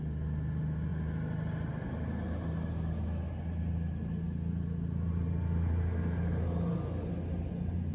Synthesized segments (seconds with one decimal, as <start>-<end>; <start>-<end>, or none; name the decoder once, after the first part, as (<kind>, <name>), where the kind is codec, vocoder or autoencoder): none

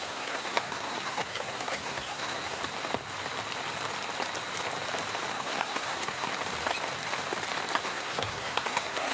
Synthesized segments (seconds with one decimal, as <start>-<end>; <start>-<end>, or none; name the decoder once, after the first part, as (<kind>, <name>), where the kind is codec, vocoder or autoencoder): 0.0-2.6 (codec, SNAC); 5.3-6.3; 7.8-9.1

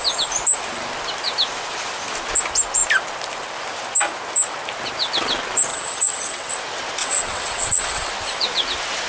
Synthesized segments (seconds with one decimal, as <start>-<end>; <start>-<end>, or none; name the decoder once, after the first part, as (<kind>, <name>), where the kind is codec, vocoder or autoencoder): 5.7-6.5 (vocoder, WaveNeXt); 7.0-8.1

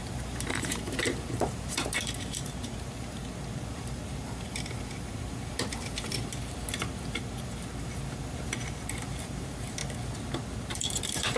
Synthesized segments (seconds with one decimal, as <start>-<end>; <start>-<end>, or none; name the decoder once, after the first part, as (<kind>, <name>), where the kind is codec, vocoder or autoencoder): 0.0-3.2 (vocoder, BigVGAN v2); 3.7-6.1; 7.8-9.8; 11.0-11.4

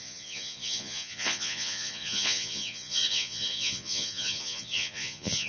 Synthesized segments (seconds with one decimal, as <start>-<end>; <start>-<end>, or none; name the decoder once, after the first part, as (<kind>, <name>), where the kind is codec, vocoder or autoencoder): 0.0-5.5 (vocoder, Vocos)

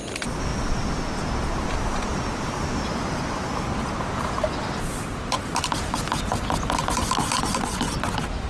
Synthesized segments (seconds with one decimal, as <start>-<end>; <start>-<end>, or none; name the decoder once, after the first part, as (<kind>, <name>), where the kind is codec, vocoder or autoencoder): none

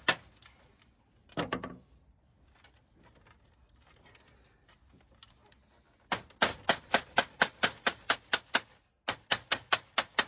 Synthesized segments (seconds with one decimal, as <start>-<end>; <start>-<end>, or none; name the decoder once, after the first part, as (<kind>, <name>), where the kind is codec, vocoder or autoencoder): none

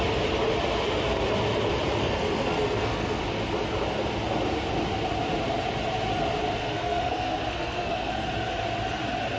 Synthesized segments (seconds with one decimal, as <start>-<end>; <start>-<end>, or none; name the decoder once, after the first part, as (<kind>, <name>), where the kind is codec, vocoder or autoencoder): 2.0-3.2 (codec, SNAC); 6.6-8.1